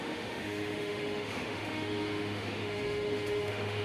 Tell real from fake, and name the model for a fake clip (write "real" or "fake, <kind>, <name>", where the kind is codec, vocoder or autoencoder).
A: fake, autoencoder, DAC-VAE